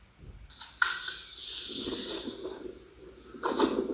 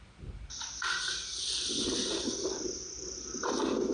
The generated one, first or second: second